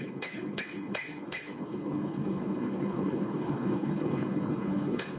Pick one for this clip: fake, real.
fake